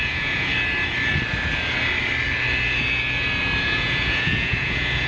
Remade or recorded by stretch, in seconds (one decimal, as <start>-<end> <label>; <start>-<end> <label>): 0.0-0.5 remade; 0.5-3.6 recorded; 3.6-5.1 remade